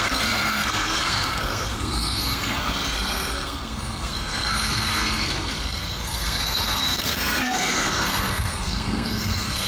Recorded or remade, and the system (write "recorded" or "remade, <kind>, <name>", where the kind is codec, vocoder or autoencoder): remade, codec, SNAC